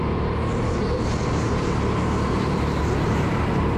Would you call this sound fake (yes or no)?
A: no